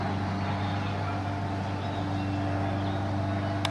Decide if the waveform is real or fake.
real